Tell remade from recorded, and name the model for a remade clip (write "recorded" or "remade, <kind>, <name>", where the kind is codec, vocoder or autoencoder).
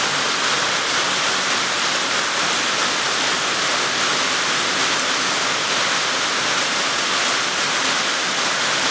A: recorded